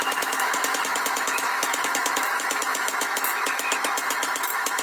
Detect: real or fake fake